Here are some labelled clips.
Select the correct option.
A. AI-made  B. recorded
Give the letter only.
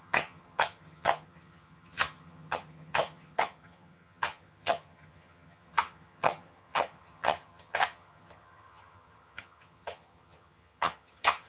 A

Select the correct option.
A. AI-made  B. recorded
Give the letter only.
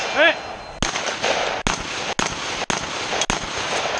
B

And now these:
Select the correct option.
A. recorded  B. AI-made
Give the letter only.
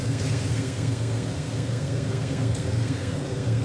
B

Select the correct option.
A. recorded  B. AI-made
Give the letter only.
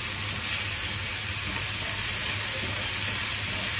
A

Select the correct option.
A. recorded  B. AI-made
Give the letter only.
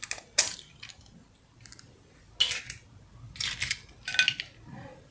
A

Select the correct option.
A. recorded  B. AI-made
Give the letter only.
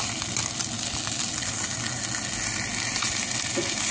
A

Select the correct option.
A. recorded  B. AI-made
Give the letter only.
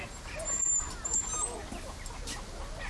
A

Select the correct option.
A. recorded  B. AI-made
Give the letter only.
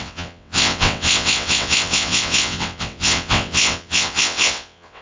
B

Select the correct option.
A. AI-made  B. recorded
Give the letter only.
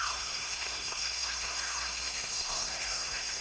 A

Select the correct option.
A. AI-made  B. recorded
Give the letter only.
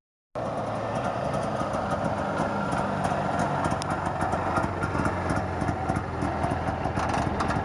B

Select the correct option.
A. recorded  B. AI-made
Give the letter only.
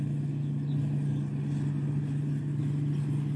A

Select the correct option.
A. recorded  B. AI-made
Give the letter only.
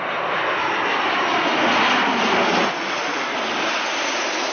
A